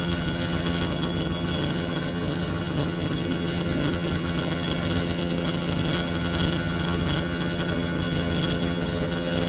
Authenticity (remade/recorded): remade